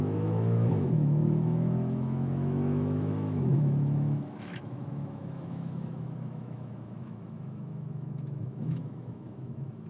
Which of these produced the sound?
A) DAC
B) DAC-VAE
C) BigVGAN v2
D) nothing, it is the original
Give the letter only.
B